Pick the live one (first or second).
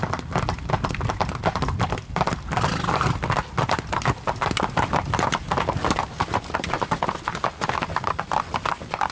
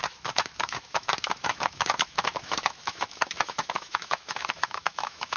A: first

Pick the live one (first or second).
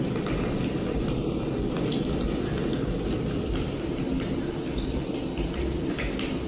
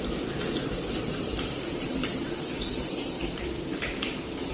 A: first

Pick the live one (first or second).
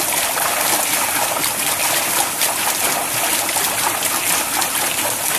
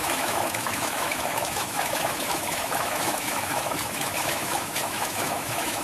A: first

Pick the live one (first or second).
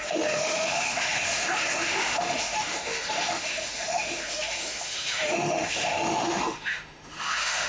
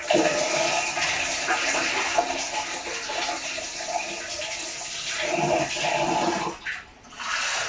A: second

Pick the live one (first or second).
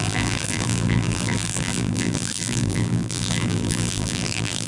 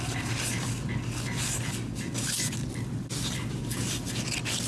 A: second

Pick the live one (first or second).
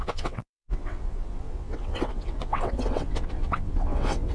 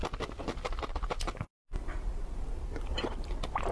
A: second